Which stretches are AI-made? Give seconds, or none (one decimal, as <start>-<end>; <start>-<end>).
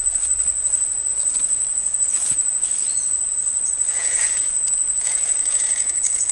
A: 1.1-2.1; 4.0-6.3